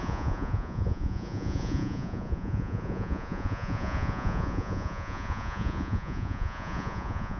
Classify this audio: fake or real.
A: fake